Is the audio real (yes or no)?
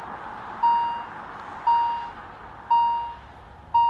yes